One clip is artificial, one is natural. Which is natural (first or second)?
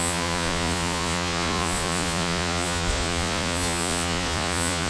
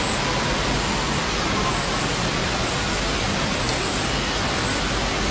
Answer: second